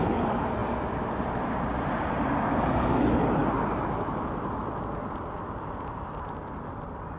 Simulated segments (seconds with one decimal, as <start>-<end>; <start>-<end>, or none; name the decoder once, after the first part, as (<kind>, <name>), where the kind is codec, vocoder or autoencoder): none

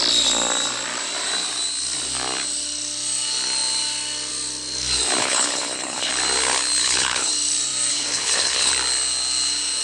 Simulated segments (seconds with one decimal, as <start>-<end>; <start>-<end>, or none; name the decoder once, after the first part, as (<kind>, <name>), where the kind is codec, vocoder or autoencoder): 5.2-6.1 (codec, HILCodec); 6.8-7.3; 7.9-8.7

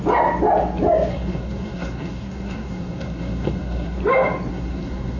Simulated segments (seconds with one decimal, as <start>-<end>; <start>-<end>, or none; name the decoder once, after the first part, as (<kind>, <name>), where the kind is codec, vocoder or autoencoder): 1.1-4.0 (codec, SNAC); 4.5-5.2

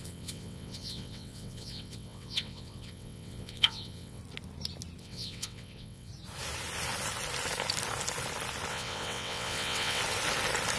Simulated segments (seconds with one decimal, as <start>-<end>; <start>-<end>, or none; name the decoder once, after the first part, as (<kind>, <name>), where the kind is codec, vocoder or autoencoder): 0.0-4.2 (vocoder, WaveNeXt); 5.0-6.1; 8.7-10.0

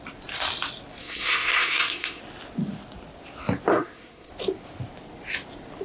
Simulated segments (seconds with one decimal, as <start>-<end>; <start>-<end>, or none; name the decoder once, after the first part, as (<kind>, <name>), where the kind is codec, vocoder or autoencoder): 1.0-2.2 (codec, SNAC); 3.7-4.3

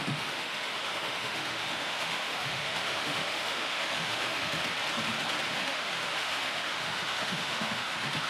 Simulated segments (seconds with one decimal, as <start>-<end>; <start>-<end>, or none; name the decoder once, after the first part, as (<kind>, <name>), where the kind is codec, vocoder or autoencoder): 0.0-4.6 (autoencoder, DAC-VAE); 5.5-8.3